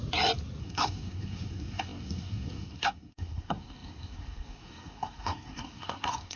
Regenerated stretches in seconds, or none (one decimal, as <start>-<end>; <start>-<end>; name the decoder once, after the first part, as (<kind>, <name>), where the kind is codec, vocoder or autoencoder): 0.6-6.4 (codec, SNAC)